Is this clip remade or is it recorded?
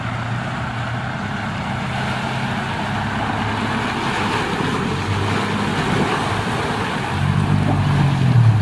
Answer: recorded